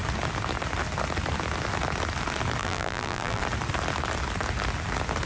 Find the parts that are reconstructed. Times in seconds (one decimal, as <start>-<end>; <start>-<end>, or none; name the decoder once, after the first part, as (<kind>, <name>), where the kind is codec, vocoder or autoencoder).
2.6-3.4 (vocoder, BigVGAN v2)